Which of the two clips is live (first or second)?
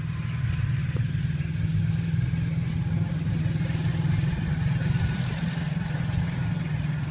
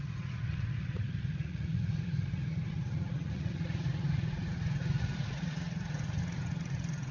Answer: first